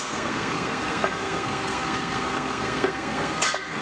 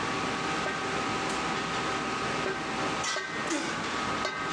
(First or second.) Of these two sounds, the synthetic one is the first